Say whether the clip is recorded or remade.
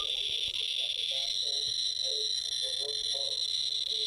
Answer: recorded